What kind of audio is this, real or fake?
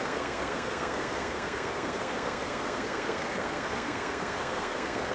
fake